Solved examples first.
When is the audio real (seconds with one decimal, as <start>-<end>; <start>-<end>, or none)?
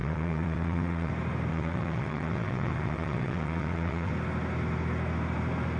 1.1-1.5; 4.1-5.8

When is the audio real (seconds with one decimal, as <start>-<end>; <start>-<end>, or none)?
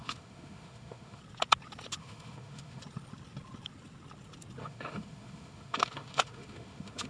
1.2-2.0; 2.8-4.6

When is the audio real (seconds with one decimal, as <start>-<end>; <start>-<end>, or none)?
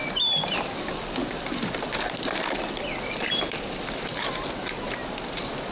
0.0-5.7